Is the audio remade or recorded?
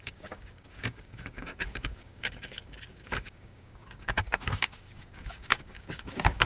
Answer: remade